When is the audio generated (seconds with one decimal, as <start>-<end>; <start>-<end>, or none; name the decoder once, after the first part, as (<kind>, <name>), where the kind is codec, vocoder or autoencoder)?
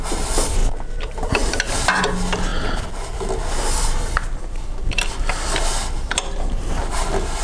none